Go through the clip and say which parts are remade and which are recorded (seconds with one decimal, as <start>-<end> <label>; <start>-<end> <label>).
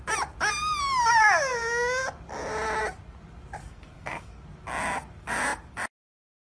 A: 0.0-3.6 recorded; 3.6-4.4 remade; 4.4-6.6 recorded